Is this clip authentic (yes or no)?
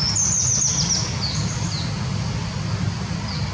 yes